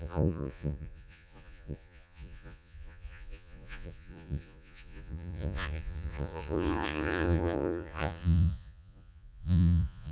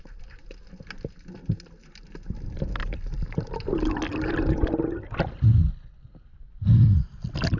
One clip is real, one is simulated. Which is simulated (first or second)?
first